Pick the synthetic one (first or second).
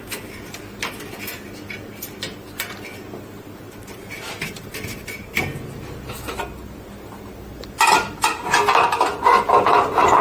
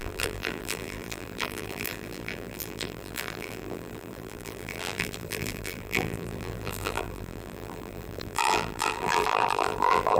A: second